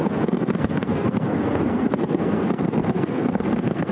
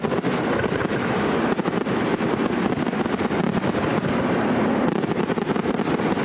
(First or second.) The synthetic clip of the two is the first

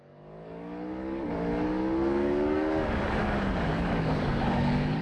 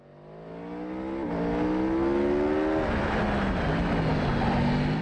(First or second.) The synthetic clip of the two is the first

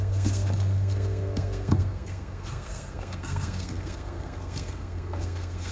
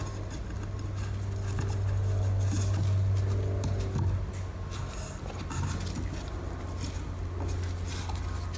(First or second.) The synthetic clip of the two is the first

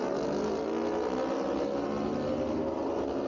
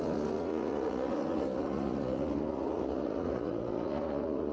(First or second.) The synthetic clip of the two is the second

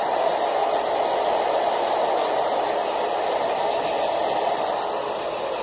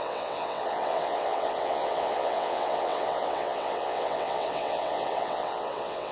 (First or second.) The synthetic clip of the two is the second